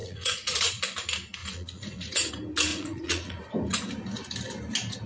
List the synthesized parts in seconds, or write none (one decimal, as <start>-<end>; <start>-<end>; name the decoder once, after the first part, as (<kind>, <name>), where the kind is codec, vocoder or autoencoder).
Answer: 0.0-0.7 (vocoder, Vocos); 1.4-2.3; 2.7-3.4